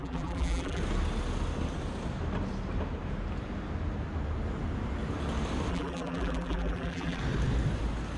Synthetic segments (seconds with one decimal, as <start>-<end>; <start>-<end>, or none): 0.0-0.8; 5.7-7.2